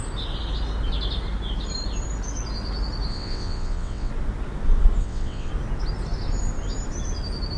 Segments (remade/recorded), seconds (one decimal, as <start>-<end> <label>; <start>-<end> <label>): 0.0-3.1 recorded; 3.1-4.1 remade; 4.1-5.0 recorded; 5.0-5.5 remade; 5.5-7.6 recorded